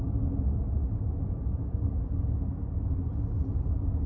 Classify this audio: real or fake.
real